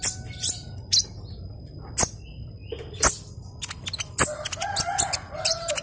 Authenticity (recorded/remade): recorded